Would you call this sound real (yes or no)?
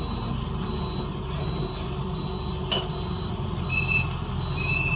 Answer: yes